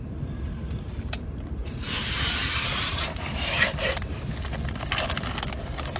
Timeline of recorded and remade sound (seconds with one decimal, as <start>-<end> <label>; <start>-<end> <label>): 0.0-1.6 recorded; 1.6-4.3 remade; 4.3-6.0 recorded